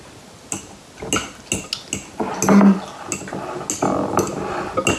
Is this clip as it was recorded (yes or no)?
yes